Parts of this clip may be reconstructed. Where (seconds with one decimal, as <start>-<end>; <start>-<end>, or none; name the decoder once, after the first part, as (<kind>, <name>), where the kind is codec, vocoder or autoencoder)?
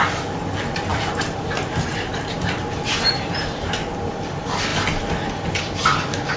0.9-4.1 (vocoder, BigVGAN v2)